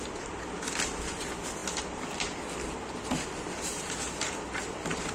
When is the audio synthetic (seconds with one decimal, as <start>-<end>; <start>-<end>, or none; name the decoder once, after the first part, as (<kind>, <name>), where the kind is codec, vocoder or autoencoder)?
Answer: none